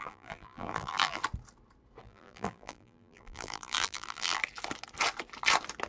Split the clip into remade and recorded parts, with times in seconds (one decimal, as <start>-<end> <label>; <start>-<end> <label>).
0.0-1.2 remade; 1.2-2.0 recorded; 2.0-4.4 remade; 4.4-5.9 recorded